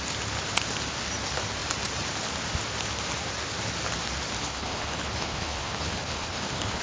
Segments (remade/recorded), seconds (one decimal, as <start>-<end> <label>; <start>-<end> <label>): 0.0-4.4 recorded; 4.4-6.8 remade